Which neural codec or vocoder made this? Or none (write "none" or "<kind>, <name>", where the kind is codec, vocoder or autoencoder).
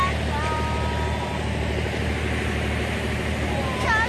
none